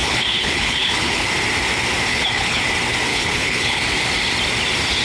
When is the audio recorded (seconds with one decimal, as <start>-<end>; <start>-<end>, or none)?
1.3-2.1; 2.6-3.1; 3.8-5.0